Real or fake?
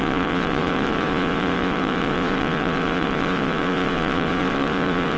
fake